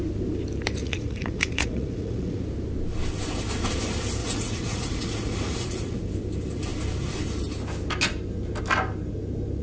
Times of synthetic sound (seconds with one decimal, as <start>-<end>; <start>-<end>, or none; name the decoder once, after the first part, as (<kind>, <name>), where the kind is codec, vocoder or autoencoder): 0.8-2.4 (vocoder, Vocos); 4.2-6.0